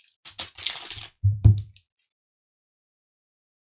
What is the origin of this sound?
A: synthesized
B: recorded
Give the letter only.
B